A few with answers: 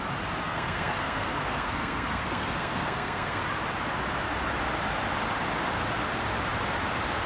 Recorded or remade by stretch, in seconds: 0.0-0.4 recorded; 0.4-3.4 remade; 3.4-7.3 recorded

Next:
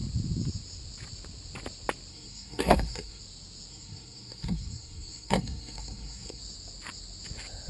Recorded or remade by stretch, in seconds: 0.0-2.1 recorded; 2.1-3.2 remade; 3.2-3.7 recorded; 3.7-6.4 remade; 6.4-7.7 recorded

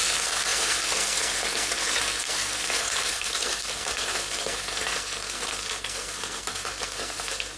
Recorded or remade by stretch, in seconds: 0.0-7.6 remade

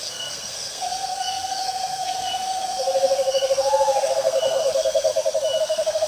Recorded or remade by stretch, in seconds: 0.0-5.1 remade; 5.1-5.6 recorded; 5.6-6.1 remade

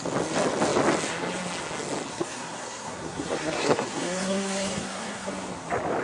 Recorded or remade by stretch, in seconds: 0.0-2.1 recorded; 2.1-5.3 remade; 5.3-6.0 recorded

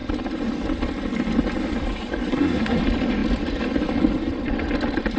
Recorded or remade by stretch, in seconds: 0.0-2.3 recorded; 2.3-2.8 remade; 2.8-5.2 recorded

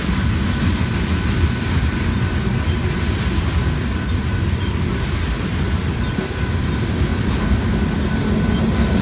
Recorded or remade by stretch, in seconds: 0.0-9.0 recorded